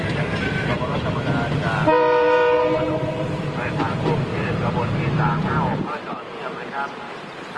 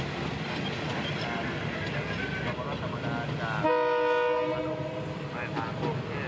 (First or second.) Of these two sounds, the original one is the second